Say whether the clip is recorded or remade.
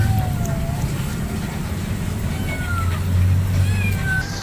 recorded